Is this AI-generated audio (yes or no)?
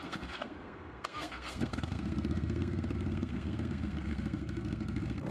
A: yes